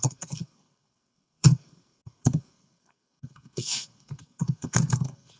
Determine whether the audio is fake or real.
fake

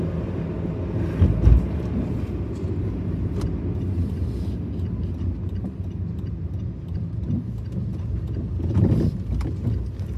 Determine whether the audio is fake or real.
real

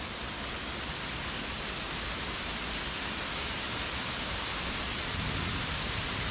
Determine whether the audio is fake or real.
real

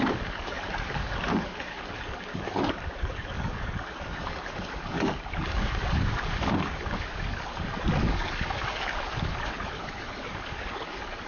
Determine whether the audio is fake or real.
fake